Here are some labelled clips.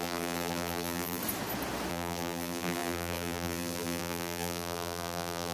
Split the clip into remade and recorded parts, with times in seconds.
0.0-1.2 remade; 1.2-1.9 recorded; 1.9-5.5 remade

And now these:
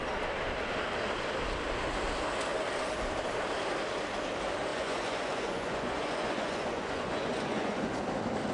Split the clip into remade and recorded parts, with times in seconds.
0.0-4.7 recorded; 4.7-8.0 remade; 8.0-8.5 recorded

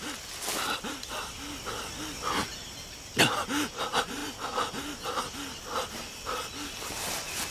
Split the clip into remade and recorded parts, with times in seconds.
0.0-7.5 recorded